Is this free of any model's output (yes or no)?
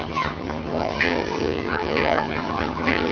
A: no